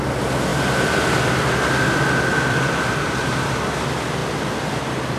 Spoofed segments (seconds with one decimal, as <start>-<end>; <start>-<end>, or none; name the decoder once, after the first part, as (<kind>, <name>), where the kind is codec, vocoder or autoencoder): 0.0-4.2 (vocoder, BigVGAN v2); 4.8-5.2